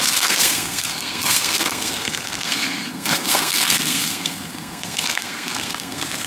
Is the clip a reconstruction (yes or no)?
yes